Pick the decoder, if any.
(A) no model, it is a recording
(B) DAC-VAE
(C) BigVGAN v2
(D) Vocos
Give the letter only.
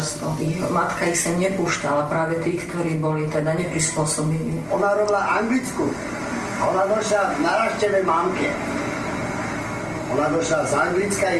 A